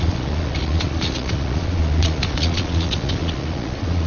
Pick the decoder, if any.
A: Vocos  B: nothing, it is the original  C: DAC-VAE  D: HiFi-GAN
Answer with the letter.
A